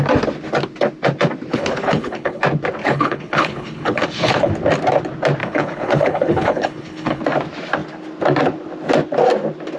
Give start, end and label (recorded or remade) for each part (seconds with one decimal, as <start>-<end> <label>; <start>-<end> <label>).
0.0-1.5 recorded; 1.5-2.4 remade; 2.4-2.8 recorded; 2.8-4.5 remade; 4.5-5.4 recorded; 5.4-7.2 remade; 7.2-9.8 recorded